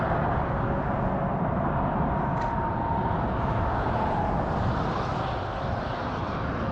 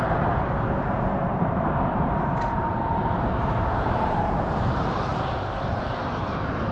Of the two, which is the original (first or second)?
first